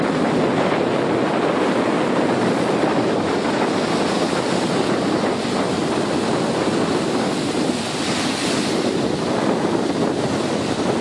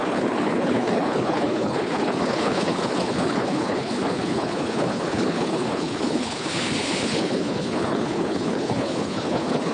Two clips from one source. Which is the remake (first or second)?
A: second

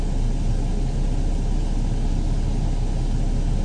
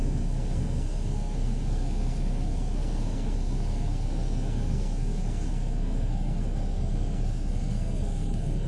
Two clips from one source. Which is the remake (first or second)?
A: second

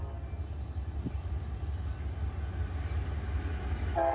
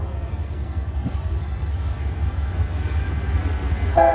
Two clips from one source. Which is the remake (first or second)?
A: second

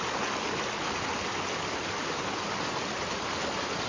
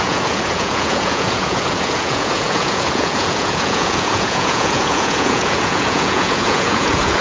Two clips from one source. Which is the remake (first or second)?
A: second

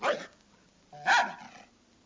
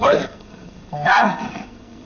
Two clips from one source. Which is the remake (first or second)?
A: second